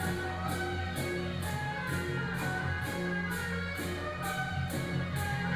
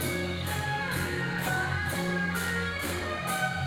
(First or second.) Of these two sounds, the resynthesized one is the second